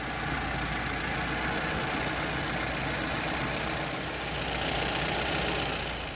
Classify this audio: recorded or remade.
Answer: recorded